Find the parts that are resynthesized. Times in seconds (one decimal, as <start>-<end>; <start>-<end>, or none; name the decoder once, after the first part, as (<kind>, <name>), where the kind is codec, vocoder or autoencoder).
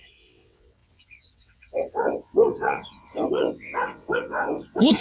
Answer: 0.0-5.0 (vocoder, WaveNeXt)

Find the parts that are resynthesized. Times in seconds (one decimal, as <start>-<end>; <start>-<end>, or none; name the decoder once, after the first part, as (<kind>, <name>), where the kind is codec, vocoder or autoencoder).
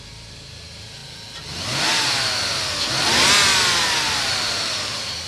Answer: 0.0-1.0 (vocoder, BigVGAN v2); 4.2-5.3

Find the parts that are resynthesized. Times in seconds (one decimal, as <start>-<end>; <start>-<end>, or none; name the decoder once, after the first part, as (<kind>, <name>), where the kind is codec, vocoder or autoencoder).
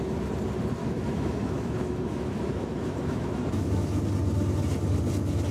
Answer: 0.8-4.0 (autoencoder, DAC-VAE)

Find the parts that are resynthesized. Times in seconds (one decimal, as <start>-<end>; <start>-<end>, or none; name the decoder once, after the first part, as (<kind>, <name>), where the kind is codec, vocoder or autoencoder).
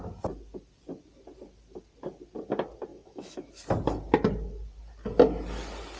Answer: 2.9-3.5 (autoencoder, DAC-VAE)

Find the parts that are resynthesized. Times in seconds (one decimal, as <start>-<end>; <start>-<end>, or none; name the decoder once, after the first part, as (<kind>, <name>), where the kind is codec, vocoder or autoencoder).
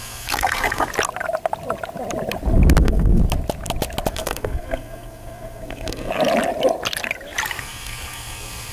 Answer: 0.0-0.9 (codec, SNAC); 2.8-3.2; 4.1-6.1; 7.6-8.7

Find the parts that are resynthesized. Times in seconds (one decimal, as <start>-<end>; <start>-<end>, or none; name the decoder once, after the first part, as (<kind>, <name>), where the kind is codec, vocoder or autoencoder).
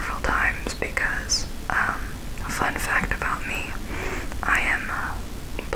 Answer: none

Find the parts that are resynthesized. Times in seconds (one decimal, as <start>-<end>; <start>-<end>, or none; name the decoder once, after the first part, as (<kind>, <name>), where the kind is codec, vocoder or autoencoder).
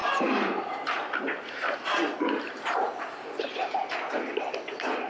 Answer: none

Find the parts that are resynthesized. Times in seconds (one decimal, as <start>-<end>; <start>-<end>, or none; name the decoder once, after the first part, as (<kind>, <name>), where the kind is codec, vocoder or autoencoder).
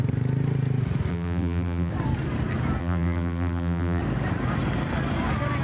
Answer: 1.1-1.9 (vocoder, BigVGAN v2); 2.8-4.0